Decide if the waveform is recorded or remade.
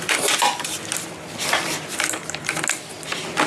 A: recorded